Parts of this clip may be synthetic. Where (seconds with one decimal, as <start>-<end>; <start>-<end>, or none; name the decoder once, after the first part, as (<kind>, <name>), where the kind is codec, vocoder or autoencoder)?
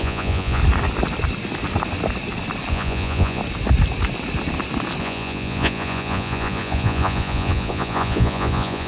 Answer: 0.0-0.6 (vocoder, Vocos); 2.7-3.4; 5.0-8.9